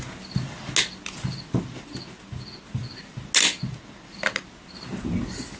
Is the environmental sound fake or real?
real